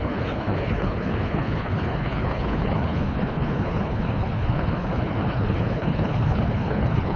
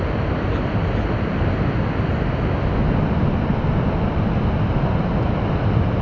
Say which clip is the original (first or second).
second